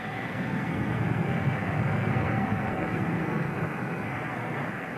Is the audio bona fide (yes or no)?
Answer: no